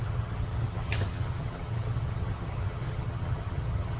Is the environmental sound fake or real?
fake